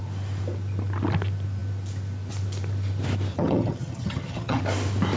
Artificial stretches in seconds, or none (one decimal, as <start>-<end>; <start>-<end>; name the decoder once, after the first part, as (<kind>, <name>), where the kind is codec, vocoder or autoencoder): 3.3-4.6 (vocoder, HiFi-GAN)